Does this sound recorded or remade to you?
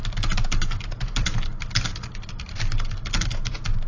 recorded